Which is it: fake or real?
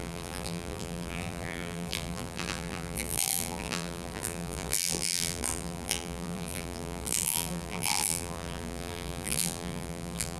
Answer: fake